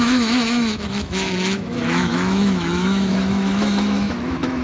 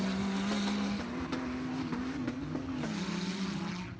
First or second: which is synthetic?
first